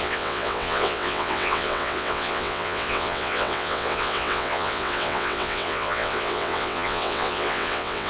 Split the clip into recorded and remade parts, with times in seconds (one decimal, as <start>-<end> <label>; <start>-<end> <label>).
0.0-8.1 remade